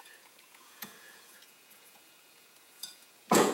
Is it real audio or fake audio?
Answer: fake